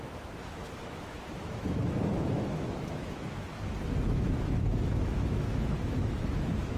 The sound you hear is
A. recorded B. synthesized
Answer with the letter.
B